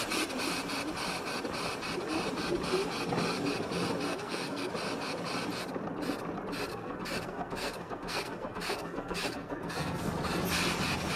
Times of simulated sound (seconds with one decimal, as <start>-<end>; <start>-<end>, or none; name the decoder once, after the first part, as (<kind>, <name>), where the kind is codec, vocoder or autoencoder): 4.1-4.7 (codec, SNAC); 6.7-10.1